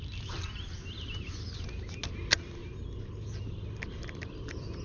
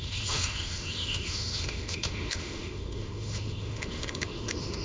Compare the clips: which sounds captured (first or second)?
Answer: first